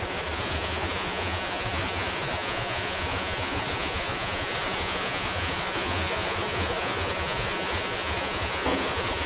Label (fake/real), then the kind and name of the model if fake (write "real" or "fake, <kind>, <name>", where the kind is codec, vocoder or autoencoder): fake, vocoder, Vocos